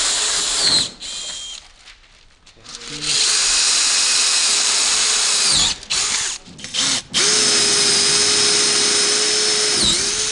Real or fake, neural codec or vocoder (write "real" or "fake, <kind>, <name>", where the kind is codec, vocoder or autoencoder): real